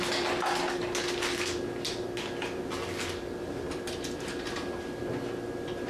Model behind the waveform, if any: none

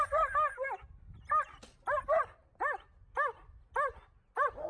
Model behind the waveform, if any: none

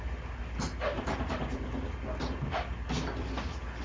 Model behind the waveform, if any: none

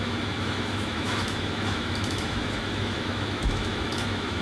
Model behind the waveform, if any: autoencoder, DAC-VAE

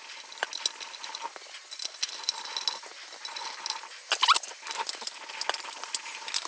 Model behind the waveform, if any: none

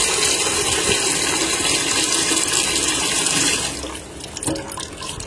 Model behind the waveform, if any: none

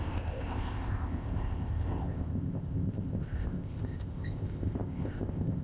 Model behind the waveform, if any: codec, ZipCodec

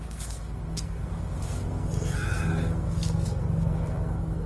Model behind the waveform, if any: codec, SNAC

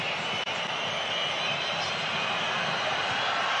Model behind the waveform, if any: none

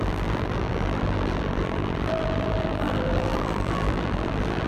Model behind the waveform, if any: vocoder, BigVGAN v2